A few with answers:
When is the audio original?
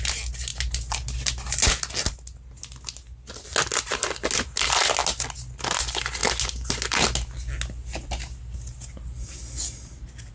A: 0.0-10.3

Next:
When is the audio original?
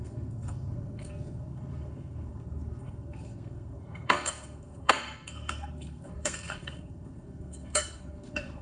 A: none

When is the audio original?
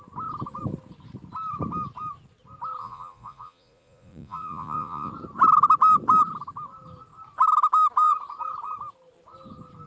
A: 0.0-2.8; 5.1-9.9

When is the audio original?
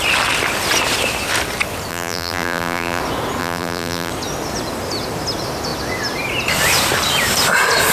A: 0.0-1.9; 3.0-3.4; 4.1-7.9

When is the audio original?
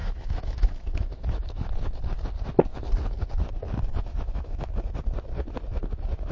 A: 1.8-4.1; 4.7-6.3